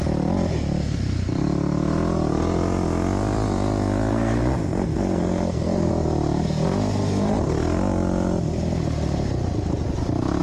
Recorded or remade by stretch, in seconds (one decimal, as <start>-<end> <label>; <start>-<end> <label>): 0.0-4.1 recorded; 4.1-5.9 remade; 5.9-10.4 recorded